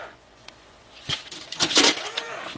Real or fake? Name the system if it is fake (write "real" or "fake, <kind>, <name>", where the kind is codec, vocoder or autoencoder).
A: fake, vocoder, Vocos